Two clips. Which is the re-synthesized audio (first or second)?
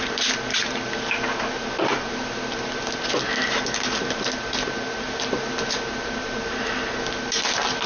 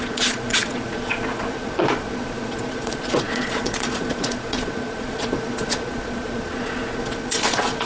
second